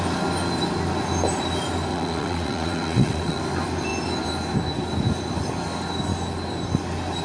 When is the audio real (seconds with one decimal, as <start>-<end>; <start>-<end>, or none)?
0.0-1.9; 3.4-7.2